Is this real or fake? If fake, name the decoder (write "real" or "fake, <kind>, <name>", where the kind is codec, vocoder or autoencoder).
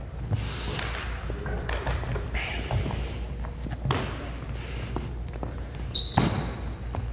real